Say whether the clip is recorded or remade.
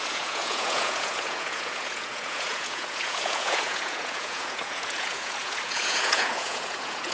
remade